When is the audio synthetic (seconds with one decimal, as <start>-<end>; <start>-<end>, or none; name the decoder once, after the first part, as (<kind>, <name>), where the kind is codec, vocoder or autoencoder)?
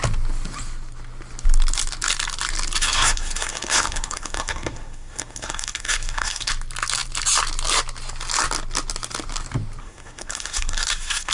2.8-6.5 (codec, SNAC); 9.8-11.3